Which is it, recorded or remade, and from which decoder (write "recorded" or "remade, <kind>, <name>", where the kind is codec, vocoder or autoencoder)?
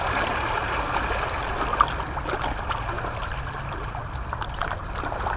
recorded